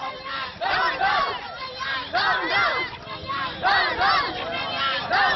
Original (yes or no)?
yes